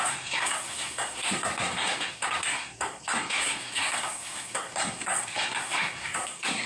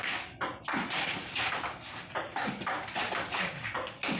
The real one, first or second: second